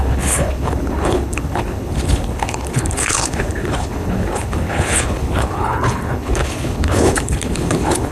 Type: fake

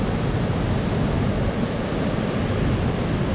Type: real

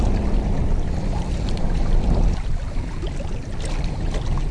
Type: real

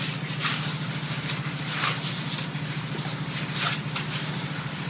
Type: real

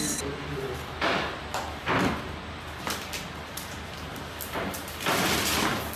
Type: real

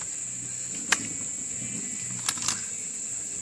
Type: real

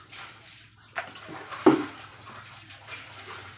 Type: real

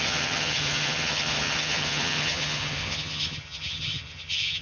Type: fake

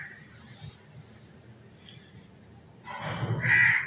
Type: real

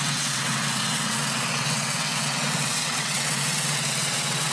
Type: fake